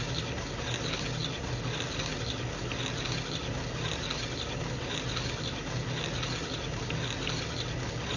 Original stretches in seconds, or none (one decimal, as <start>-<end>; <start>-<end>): 0.0-8.2